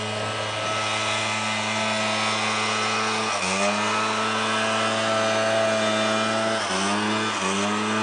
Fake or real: real